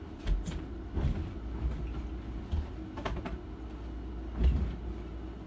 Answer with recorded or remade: recorded